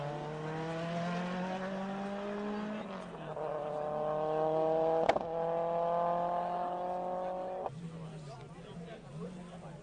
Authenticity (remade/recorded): recorded